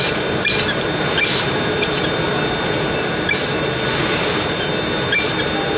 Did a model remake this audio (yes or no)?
no